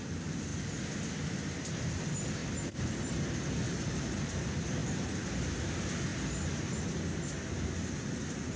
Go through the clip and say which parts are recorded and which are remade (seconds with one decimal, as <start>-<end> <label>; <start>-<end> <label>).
0.0-8.6 recorded